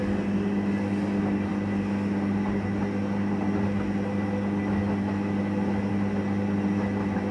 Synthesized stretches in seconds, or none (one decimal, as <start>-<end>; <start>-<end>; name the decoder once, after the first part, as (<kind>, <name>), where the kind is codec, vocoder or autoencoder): none